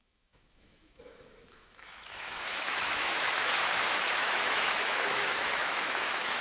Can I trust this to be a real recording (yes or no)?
no